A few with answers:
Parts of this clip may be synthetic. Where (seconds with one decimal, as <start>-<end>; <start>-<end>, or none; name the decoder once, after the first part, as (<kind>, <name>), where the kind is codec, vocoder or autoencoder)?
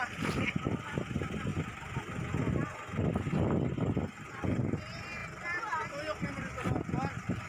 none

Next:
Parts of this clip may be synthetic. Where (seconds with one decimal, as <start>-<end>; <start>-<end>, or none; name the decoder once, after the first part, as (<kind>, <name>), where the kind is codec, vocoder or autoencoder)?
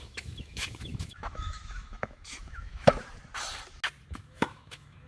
0.0-3.0 (autoencoder, DAC-VAE); 4.1-5.1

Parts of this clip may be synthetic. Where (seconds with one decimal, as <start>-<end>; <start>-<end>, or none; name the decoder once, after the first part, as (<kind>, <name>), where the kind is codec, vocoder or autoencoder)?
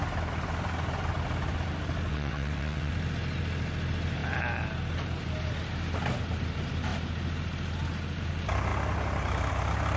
2.1-2.9 (vocoder, WaveNeXt)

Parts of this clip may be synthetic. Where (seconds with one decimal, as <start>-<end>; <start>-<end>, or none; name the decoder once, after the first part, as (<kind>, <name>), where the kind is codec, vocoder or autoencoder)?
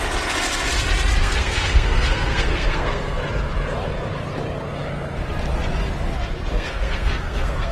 1.2-3.2 (codec, SNAC); 6.5-7.7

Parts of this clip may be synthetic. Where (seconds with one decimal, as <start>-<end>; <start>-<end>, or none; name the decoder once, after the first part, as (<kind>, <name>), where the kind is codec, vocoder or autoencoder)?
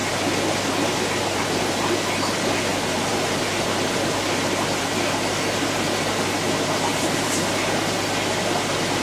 2.7-3.4 (vocoder, BigVGAN v2); 6.9-7.5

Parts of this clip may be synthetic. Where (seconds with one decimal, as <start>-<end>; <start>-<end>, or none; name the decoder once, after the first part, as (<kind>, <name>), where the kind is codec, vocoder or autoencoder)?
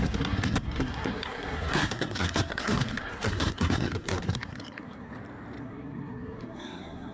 0.0-5.1 (codec, SNAC); 5.6-7.1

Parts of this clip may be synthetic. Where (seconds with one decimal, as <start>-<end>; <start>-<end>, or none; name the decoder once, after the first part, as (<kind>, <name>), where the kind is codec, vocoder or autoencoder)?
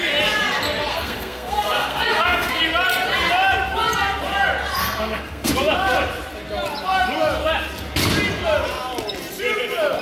0.9-2.6 (codec, SNAC); 4.8-5.5